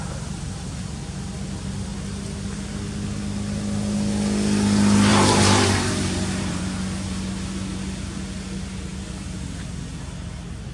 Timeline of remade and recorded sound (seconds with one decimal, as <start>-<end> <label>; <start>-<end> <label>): 0.0-5.1 recorded; 5.1-6.6 remade; 6.6-10.7 recorded